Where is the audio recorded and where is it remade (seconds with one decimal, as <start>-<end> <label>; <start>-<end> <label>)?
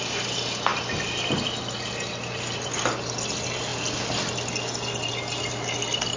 0.0-6.2 recorded